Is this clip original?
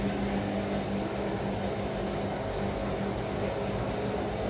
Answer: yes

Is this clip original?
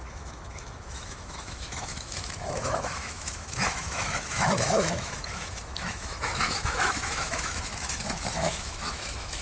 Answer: no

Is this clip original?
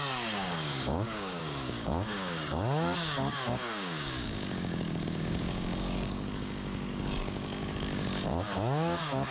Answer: no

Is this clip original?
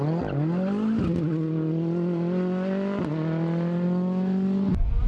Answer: yes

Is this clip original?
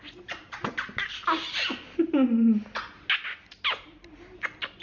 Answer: yes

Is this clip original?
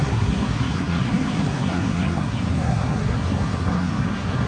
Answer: no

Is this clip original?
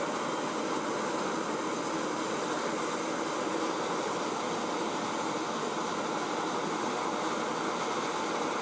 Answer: yes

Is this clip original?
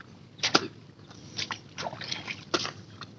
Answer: no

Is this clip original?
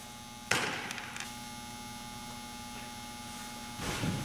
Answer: yes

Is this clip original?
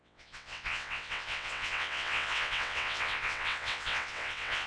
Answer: no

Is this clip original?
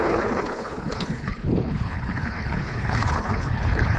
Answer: no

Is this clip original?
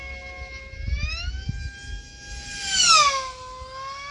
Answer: yes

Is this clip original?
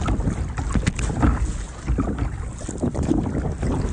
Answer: yes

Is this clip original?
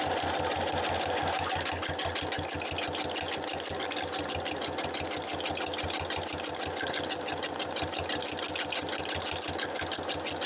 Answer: yes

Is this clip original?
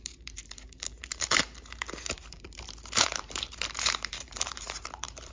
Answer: no